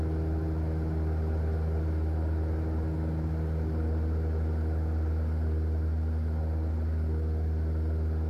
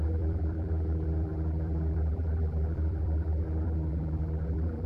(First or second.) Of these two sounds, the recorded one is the first